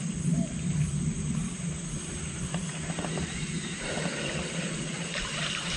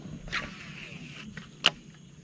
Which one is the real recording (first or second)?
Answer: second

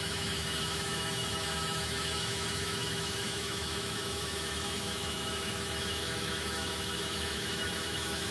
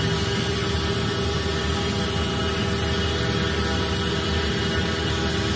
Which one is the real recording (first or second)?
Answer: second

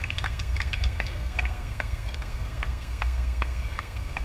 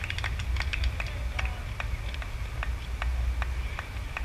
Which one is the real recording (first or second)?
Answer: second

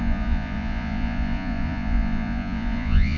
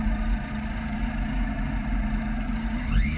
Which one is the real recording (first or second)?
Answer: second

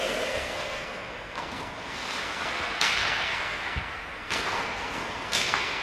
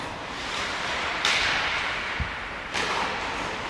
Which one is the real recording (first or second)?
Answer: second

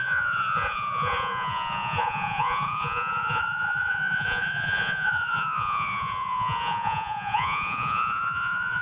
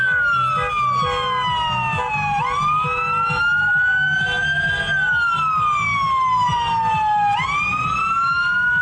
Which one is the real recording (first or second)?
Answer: second